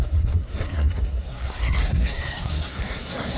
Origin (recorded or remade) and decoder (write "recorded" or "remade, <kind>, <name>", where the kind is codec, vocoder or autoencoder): remade, codec, SNAC